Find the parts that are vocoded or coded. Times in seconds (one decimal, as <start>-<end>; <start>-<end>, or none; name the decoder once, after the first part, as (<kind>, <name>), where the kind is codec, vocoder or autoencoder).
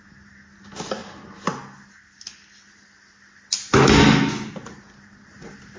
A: none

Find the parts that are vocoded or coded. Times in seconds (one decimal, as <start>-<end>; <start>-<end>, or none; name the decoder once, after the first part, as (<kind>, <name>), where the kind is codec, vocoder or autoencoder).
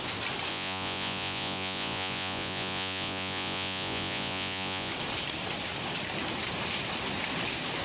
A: 0.5-4.9 (vocoder, Vocos)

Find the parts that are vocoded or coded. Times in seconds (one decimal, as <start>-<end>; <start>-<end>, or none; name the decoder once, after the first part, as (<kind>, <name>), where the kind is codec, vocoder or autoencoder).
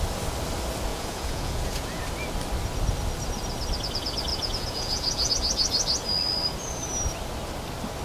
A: 0.9-2.0 (vocoder, Vocos); 4.3-5.3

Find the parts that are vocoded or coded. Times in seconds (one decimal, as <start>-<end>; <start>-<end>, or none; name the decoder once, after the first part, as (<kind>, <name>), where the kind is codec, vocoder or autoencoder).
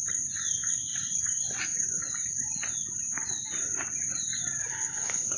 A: 4.6-5.4 (codec, HILCodec)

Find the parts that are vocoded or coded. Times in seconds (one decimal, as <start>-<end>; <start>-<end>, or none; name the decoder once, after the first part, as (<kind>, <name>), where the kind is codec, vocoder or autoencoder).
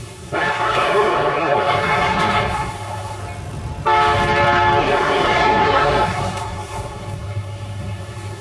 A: 0.0-3.2 (codec, SNAC); 4.8-8.4